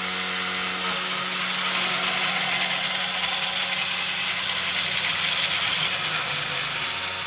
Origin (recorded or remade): recorded